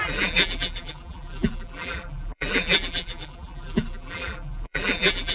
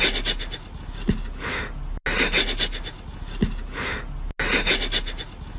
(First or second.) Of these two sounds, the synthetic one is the first